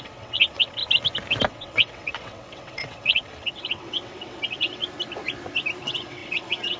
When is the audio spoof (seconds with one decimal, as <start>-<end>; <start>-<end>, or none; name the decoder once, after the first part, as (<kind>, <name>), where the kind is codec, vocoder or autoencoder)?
0.0-0.8 (vocoder, WaveNeXt); 1.5-4.8; 5.8-6.8